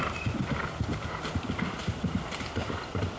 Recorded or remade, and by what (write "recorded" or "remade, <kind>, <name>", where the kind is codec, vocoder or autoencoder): recorded